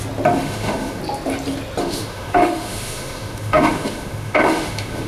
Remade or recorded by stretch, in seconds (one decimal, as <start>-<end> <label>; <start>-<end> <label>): 0.0-0.4 recorded; 0.4-1.0 remade; 1.0-1.8 recorded; 1.8-5.1 remade

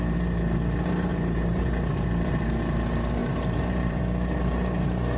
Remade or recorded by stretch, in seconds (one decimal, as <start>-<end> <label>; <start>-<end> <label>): 0.0-1.1 recorded; 1.1-2.6 remade; 2.6-3.2 recorded; 3.2-4.0 remade; 4.0-5.2 recorded